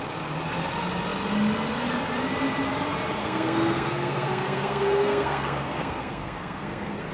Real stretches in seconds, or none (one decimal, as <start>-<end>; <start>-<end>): 0.0-3.2